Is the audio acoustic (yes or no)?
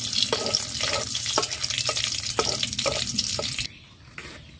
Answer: yes